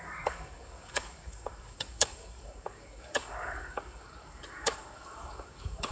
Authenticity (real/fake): fake